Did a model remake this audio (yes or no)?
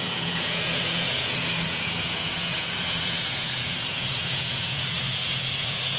yes